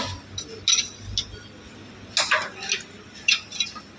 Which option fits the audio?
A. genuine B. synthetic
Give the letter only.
A